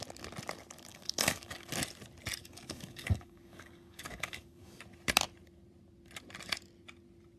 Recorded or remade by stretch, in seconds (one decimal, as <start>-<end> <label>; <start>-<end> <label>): 0.0-0.9 recorded; 0.9-1.7 remade; 1.7-2.4 recorded; 2.4-4.8 remade; 4.8-7.4 recorded

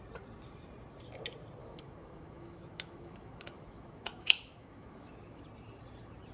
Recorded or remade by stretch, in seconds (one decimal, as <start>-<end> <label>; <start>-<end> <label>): 0.0-1.6 recorded; 1.6-5.4 remade; 5.4-6.3 recorded

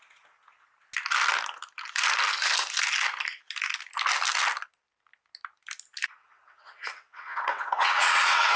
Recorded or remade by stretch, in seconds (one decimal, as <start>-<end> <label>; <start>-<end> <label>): 0.0-6.2 recorded; 6.2-8.6 remade

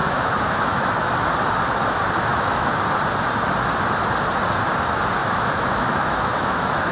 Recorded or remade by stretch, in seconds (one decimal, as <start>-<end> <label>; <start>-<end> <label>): 0.0-1.1 remade; 1.1-2.3 recorded; 2.3-2.8 remade; 2.8-5.2 recorded; 5.2-6.9 remade

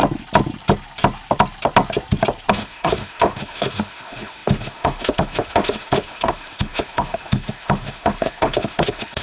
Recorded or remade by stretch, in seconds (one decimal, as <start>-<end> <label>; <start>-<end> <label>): 0.0-2.5 recorded; 2.5-9.2 remade

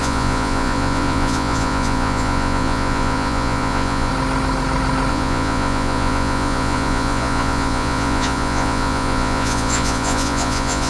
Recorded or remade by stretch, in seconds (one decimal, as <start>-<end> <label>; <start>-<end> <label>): 0.0-4.1 remade; 4.1-5.1 recorded; 5.1-10.9 remade

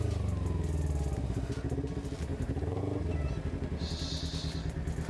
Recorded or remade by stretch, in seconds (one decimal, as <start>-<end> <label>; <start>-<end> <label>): 0.0-2.3 recorded; 2.3-2.8 remade; 2.8-5.1 recorded

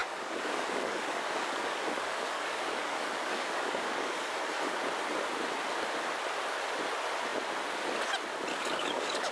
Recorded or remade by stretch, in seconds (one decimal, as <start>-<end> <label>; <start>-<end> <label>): 0.0-4.8 remade; 4.8-8.5 recorded; 8.5-9.3 remade